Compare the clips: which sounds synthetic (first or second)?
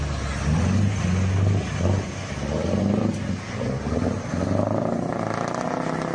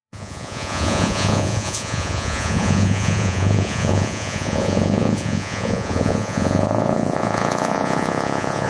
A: second